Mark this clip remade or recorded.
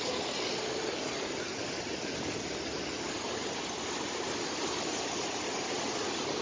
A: recorded